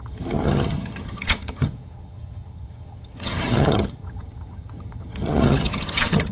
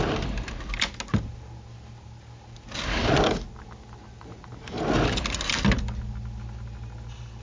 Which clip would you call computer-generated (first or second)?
first